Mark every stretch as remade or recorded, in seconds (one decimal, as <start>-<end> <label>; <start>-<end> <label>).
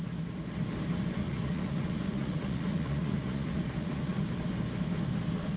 0.0-1.2 recorded; 1.2-4.2 remade; 4.2-5.6 recorded